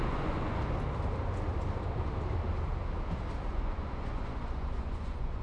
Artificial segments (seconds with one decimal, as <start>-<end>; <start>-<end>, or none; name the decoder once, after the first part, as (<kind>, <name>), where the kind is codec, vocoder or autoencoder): 0.0-0.6 (vocoder, Vocos); 3.5-5.4

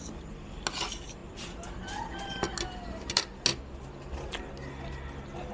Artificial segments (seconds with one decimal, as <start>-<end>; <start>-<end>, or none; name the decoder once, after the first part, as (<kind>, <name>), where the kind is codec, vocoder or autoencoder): none

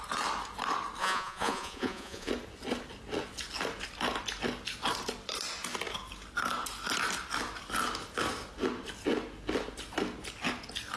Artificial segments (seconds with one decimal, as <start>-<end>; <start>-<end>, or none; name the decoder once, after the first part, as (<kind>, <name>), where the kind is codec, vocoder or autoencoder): 1.0-2.3 (vocoder, Vocos)

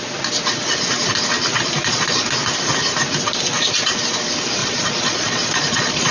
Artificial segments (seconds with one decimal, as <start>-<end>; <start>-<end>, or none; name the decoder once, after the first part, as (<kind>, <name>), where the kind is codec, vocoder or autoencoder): 1.5-2.3 (vocoder, Vocos); 4.6-6.1

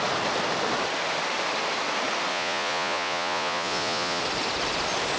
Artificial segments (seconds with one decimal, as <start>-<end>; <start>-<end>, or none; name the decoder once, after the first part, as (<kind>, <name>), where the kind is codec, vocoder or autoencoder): 2.3-4.2 (vocoder, Vocos)

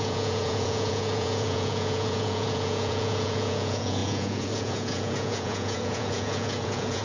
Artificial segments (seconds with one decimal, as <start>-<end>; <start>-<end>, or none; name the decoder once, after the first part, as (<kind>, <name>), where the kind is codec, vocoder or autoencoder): 0.0-7.0 (vocoder, Vocos)

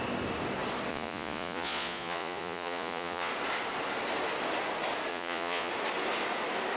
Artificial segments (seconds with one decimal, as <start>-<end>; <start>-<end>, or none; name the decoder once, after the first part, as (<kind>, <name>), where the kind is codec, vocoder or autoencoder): 0.9-3.3 (vocoder, Vocos); 5.1-5.7

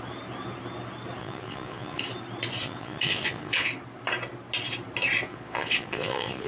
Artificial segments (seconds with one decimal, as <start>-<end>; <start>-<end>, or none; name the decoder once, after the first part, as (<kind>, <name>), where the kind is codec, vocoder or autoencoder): 1.2-2.0 (vocoder, Vocos); 2.6-3.7; 5.3-6.5